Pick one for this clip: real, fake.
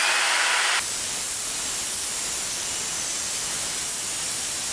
real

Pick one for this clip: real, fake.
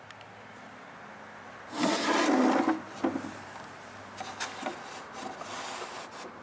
real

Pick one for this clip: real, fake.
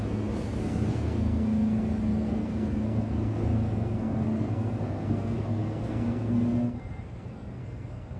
fake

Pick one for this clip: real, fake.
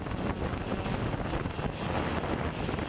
real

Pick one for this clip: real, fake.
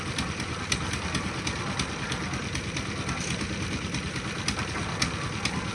real